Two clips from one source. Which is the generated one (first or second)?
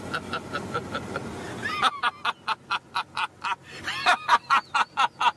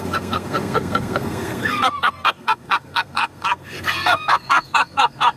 second